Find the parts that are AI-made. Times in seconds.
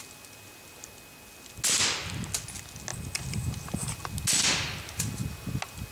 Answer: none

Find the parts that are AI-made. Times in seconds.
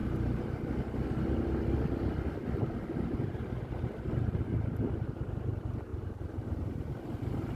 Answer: none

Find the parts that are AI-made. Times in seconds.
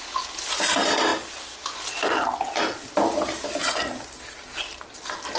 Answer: none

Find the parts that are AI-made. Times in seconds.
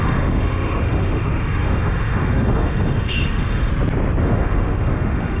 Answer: 0.0-3.7 (autoencoder, DAC-VAE); 4.2-5.4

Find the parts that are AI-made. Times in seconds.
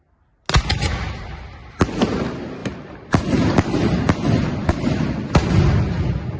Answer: 2.6-4.7 (vocoder, BigVGAN v2)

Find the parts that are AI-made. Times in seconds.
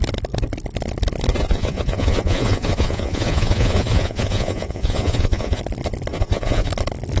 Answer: 1.3-5.6 (vocoder, Vocos); 6.1-6.7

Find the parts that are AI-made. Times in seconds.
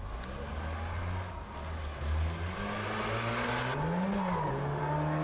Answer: none